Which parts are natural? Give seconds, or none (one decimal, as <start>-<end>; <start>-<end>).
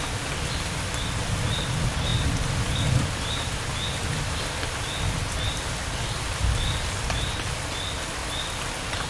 0.0-2.1; 2.7-8.2